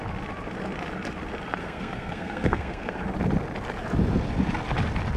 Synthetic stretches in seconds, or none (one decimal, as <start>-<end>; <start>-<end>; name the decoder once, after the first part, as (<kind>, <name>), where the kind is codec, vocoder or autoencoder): 1.6-3.0 (codec, SNAC)